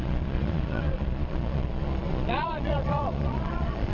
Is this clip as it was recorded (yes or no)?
no